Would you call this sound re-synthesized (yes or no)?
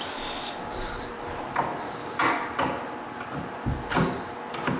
no